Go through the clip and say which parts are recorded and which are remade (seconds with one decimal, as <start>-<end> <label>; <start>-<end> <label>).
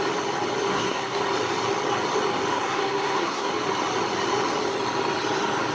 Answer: 0.0-0.7 recorded; 0.7-1.2 remade; 1.2-2.5 recorded; 2.5-3.5 remade; 3.5-5.7 recorded